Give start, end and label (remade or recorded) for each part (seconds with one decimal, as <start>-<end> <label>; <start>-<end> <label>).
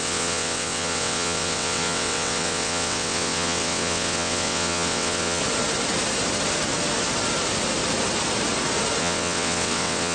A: 0.0-5.4 remade; 5.4-9.0 recorded; 9.0-10.1 remade